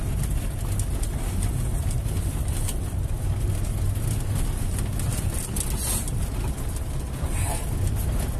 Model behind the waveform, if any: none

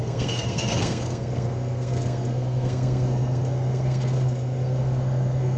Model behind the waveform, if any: codec, SNAC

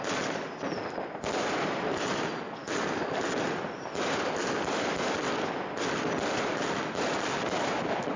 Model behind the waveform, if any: none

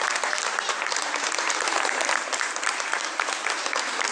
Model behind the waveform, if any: vocoder, BigVGAN v2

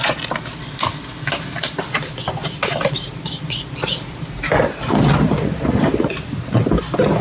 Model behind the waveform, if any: none